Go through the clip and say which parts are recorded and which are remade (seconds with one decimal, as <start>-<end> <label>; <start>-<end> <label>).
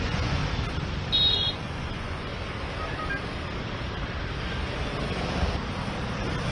0.0-0.4 remade; 0.4-1.3 recorded; 1.3-2.3 remade; 2.3-6.5 recorded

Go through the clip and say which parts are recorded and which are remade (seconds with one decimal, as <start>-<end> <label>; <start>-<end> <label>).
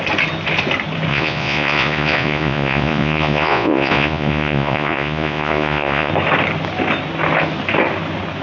0.0-1.1 recorded; 1.1-6.1 remade; 6.1-8.4 recorded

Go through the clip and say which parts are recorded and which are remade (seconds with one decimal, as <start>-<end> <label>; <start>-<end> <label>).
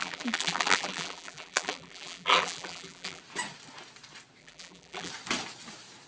0.0-3.2 remade; 3.2-4.4 recorded; 4.4-5.1 remade; 5.1-6.1 recorded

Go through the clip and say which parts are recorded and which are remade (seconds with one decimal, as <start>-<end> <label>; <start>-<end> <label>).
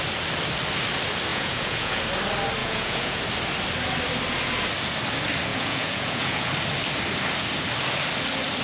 0.0-1.3 recorded; 1.3-2.0 remade; 2.0-2.6 recorded; 2.6-3.2 remade; 3.2-5.5 recorded; 5.5-6.5 remade; 6.5-8.6 recorded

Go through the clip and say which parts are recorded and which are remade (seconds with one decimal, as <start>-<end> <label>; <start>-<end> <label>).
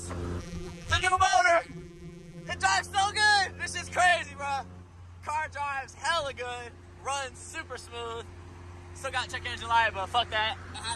0.0-0.4 recorded; 0.4-2.5 remade; 2.5-11.0 recorded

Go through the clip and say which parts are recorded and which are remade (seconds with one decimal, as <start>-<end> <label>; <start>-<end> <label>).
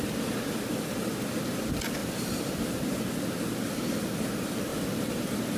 0.0-2.0 recorded; 2.0-3.0 remade; 3.0-5.6 recorded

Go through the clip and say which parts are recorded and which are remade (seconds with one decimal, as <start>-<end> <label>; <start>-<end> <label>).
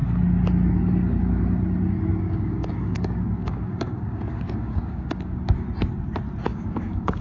0.0-2.1 recorded; 2.1-5.4 remade; 5.4-6.5 recorded; 6.5-7.2 remade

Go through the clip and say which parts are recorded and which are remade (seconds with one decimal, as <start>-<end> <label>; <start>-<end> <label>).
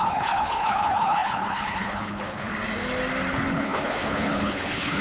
0.0-2.5 remade; 2.5-3.3 recorded; 3.3-5.0 remade